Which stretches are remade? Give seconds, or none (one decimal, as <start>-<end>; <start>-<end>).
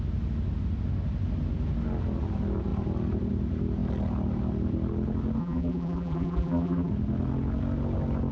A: 5.4-6.9